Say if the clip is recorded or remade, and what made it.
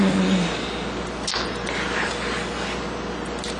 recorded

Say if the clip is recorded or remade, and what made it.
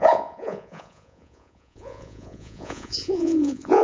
remade, vocoder, Vocos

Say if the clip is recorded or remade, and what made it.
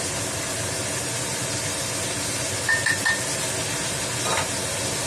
recorded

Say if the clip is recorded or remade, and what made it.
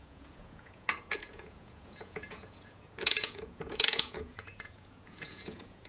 remade, vocoder, Vocos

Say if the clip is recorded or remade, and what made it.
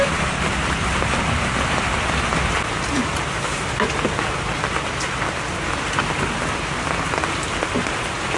recorded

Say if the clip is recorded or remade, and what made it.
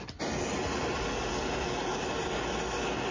recorded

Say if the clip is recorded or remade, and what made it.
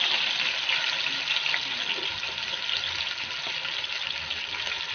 recorded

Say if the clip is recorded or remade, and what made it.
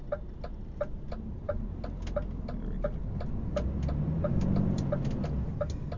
recorded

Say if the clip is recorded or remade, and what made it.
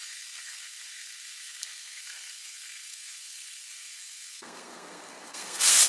remade, codec, SNAC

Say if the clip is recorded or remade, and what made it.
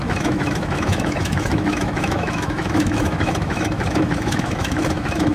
remade, autoencoder, DAC-VAE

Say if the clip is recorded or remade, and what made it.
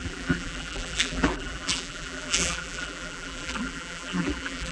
remade, vocoder, BigVGAN v2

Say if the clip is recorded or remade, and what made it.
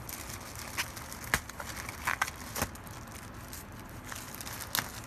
recorded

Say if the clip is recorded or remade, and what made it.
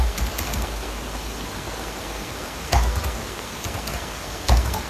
remade, codec, SNAC